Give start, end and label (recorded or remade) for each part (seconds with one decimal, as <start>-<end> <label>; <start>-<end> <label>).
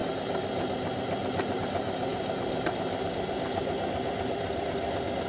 0.0-5.3 recorded